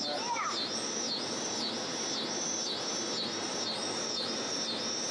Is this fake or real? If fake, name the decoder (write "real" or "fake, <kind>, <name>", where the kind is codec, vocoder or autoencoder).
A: real